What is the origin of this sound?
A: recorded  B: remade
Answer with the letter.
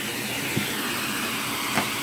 A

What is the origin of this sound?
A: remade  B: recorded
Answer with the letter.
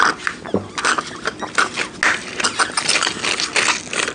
B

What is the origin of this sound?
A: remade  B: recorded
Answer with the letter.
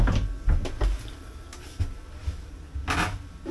B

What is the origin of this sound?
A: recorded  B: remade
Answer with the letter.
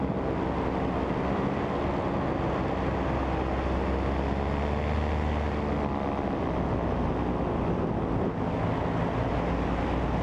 A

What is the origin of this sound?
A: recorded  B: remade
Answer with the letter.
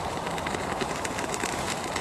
B